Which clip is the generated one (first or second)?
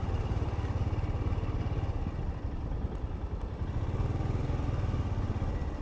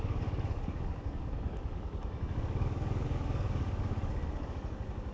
second